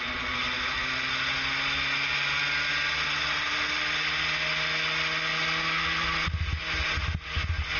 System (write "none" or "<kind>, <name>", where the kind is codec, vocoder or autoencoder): none